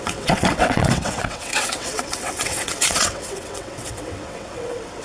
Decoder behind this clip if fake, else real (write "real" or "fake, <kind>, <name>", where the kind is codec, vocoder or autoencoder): fake, vocoder, WaveNeXt